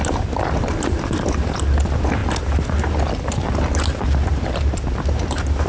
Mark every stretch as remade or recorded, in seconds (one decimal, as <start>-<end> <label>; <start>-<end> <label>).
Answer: 0.0-5.7 recorded